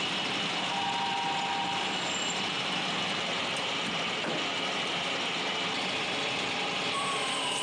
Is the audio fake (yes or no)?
no